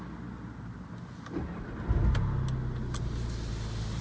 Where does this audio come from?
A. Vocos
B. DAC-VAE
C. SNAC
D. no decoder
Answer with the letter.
D